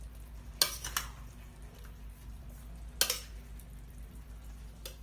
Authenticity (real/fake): real